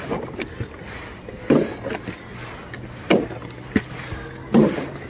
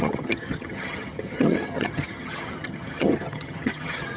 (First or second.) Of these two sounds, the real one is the first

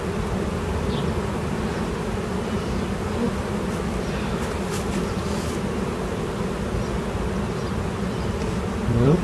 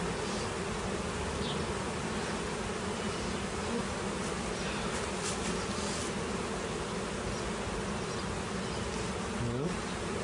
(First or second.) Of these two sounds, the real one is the second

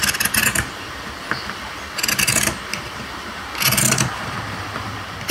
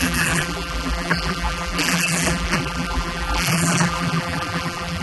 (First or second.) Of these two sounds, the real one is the first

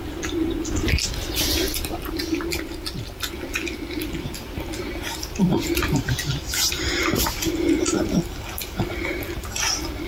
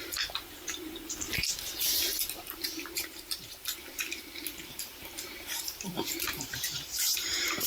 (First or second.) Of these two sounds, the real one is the first